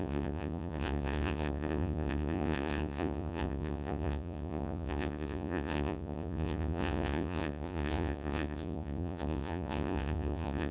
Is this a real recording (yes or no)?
no